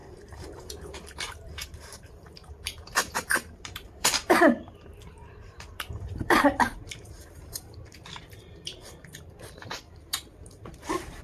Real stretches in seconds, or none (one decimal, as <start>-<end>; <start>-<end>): none